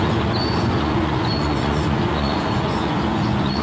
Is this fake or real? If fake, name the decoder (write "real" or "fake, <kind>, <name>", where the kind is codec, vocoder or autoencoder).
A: fake, vocoder, Vocos